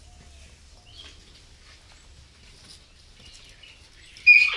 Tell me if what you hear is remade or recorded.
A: recorded